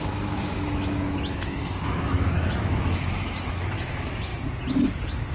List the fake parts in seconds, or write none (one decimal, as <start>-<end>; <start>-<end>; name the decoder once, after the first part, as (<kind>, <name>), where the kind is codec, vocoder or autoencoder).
0.0-4.3 (autoencoder, DAC-VAE)

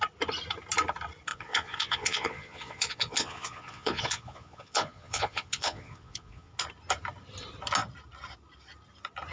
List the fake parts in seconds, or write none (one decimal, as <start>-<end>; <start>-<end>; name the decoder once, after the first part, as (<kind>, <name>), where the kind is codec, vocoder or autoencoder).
1.3-6.5 (vocoder, Vocos)

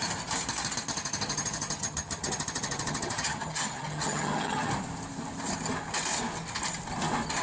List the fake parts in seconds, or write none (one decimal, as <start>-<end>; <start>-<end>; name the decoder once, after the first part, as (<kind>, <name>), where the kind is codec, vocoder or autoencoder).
0.9-4.7 (vocoder, HiFi-GAN)

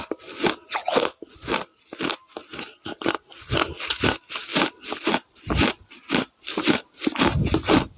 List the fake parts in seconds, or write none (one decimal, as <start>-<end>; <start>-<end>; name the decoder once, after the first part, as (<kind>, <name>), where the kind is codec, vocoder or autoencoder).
none

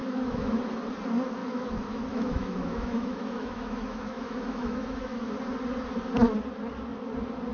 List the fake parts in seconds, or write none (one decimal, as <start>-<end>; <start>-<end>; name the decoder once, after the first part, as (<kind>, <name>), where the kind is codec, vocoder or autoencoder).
0.0-0.6 (autoencoder, DAC-VAE); 1.4-5.3

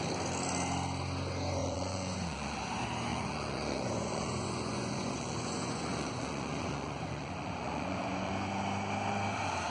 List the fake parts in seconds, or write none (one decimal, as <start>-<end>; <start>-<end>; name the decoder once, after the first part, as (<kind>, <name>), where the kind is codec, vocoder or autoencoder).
1.6-2.6 (vocoder, Vocos); 3.1-8.3

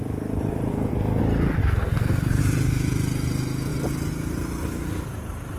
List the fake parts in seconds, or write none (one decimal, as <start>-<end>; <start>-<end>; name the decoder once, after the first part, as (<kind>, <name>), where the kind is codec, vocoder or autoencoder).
0.7-1.2 (codec, SNAC); 1.6-2.4